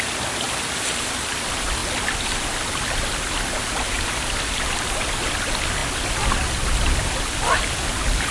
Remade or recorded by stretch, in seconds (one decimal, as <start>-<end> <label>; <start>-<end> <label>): 0.0-8.3 recorded